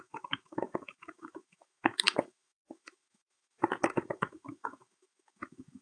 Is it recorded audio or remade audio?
remade